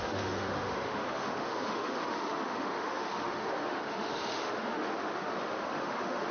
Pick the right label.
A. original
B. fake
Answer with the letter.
B